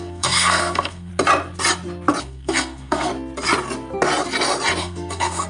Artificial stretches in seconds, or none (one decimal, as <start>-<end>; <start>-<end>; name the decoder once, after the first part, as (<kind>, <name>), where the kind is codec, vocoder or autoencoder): 0.0-1.1 (codec, SNAC); 2.2-3.1; 4.8-5.5

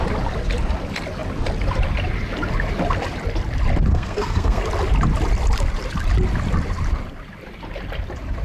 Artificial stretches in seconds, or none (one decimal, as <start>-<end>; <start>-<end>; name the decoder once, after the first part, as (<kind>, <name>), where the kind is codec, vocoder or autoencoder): 3.9-4.6 (codec, SNAC)

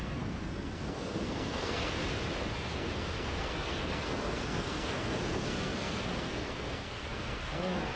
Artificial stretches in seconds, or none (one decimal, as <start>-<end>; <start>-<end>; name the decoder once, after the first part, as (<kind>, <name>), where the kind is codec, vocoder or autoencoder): 0.0-2.0 (codec, SNAC); 2.5-8.0

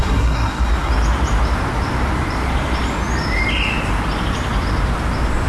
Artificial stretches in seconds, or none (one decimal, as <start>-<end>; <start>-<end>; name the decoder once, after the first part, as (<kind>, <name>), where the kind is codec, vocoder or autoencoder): 0.0-0.9 (codec, SNAC)